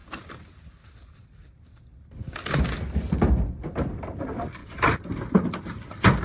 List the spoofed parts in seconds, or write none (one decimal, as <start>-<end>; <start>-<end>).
none